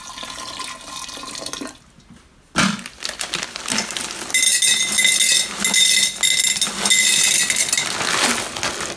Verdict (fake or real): real